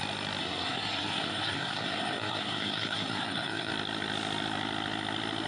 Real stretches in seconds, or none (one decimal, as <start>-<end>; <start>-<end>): 0.0-0.4; 3.7-5.5

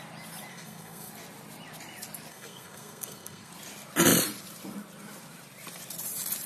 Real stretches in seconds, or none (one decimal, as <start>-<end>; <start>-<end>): 0.0-0.5; 1.1-2.3; 3.5-6.5

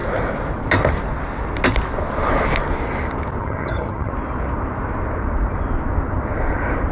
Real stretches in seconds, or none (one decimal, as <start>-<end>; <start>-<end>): 0.0-3.4; 4.1-6.9